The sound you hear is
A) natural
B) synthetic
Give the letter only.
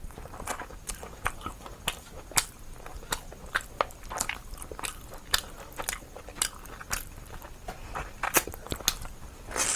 A